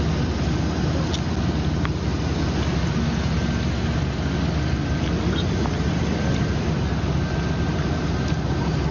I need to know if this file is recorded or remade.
recorded